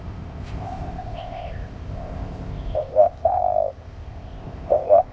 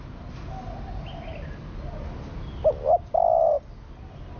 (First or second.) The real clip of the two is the second